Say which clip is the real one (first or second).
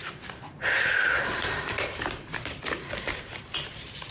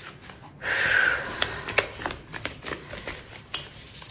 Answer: second